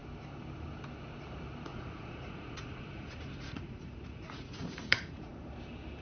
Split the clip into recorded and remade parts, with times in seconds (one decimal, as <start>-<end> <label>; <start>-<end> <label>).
0.0-1.7 recorded; 1.7-5.3 remade; 5.3-6.0 recorded